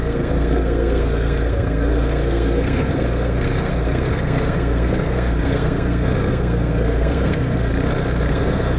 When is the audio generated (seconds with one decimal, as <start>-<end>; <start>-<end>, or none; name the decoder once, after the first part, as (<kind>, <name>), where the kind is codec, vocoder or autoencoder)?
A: 0.0-7.7 (codec, SNAC); 8.3-8.8